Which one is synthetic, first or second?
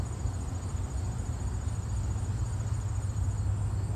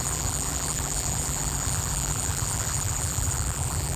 second